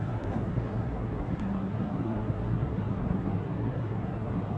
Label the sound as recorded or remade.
remade